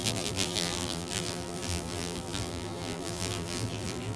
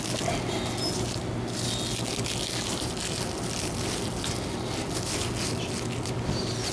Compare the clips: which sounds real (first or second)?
second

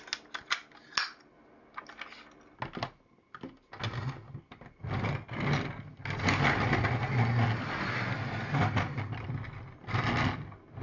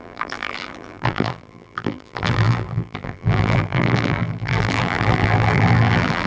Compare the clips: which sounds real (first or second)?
first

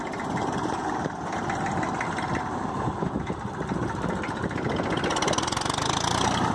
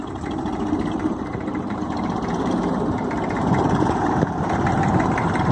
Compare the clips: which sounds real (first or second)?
first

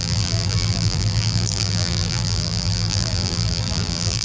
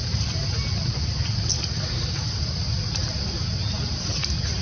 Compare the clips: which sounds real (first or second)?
second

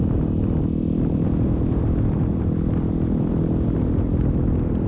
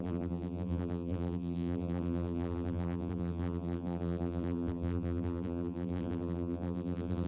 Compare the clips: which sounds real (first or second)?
first